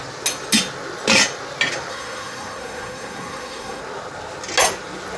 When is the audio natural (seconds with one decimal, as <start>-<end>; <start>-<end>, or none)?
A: 0.0-1.9; 3.8-5.2